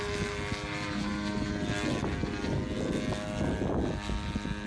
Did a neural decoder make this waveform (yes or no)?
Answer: no